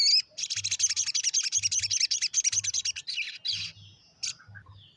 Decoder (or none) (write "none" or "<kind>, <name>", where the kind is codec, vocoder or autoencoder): none